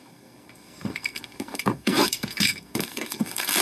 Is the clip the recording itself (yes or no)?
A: no